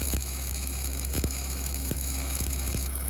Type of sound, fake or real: fake